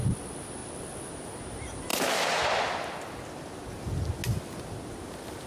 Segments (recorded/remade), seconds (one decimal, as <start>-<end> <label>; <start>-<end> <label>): 0.0-5.5 recorded

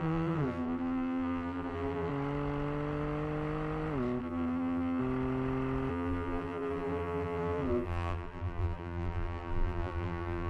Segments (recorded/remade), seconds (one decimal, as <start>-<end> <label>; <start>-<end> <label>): 0.0-2.1 remade; 2.1-4.2 recorded; 4.2-5.0 remade; 5.0-5.9 recorded; 5.9-10.5 remade

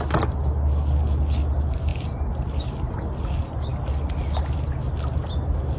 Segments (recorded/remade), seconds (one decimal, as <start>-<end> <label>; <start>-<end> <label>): 0.0-5.8 recorded

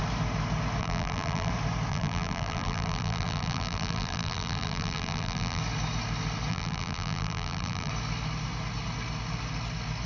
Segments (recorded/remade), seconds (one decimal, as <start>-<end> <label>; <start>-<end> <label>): 0.0-0.8 recorded; 0.8-1.5 remade; 1.5-1.9 recorded; 1.9-5.6 remade; 5.6-6.5 recorded; 6.5-7.9 remade; 7.9-10.1 recorded

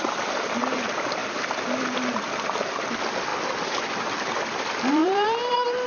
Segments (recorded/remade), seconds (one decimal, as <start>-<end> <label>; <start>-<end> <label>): 0.0-3.3 remade; 3.3-3.8 recorded; 3.8-5.9 remade

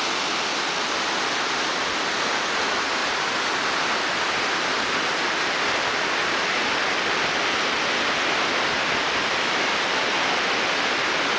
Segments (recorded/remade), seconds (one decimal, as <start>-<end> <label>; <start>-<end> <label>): 0.0-3.0 recorded; 3.0-3.6 remade; 3.6-11.4 recorded